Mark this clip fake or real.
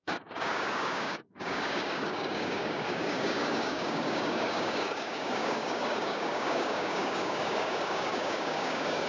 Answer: fake